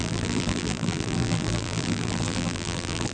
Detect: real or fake fake